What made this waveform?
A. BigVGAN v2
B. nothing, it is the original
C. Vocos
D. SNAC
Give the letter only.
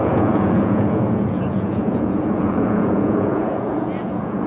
C